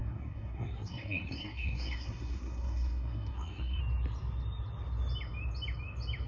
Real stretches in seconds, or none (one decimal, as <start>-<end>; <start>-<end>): 3.8-6.3